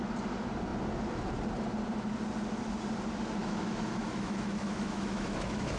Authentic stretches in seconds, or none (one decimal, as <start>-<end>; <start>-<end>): 0.0-3.4